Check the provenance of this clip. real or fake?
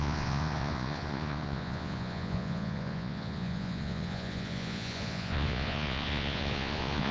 fake